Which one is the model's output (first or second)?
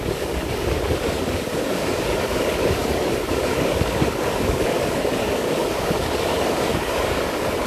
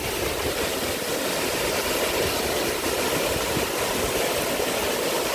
first